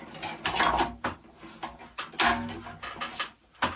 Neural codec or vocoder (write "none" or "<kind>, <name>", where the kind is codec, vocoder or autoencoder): none